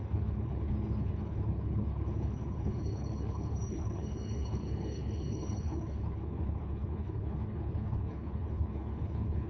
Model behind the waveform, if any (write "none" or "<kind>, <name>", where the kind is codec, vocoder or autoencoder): codec, HILCodec